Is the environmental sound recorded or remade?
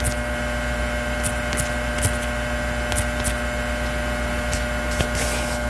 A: recorded